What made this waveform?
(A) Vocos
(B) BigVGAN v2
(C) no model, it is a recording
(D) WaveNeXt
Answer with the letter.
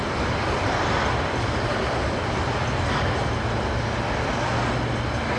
C